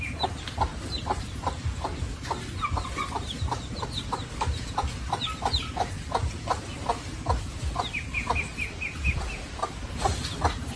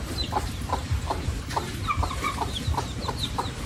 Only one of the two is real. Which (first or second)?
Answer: first